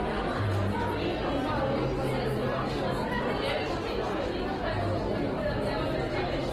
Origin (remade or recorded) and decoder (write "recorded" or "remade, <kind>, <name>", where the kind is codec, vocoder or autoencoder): recorded